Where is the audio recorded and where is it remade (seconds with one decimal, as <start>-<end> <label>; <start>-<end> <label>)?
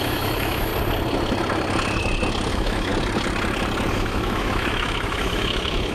0.0-0.7 remade; 0.7-2.5 recorded; 2.5-2.9 remade; 2.9-3.9 recorded; 3.9-5.9 remade